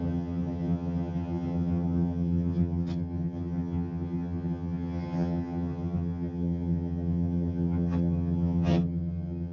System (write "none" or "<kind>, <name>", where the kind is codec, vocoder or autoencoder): vocoder, HiFi-GAN